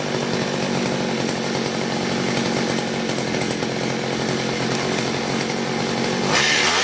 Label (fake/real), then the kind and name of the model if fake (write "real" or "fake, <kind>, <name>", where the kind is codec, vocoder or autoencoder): real